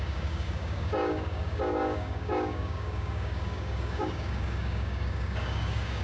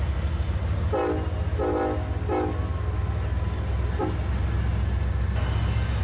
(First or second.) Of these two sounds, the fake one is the first